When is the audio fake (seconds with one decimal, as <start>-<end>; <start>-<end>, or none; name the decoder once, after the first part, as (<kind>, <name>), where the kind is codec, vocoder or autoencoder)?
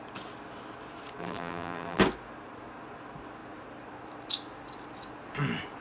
1.2-2.0 (vocoder, BigVGAN v2)